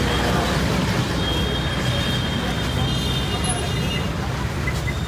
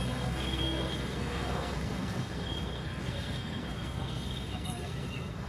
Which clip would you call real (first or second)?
first